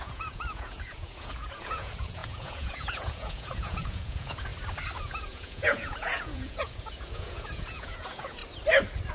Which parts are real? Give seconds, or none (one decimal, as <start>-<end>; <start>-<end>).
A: 4.5-5.0; 8.4-9.1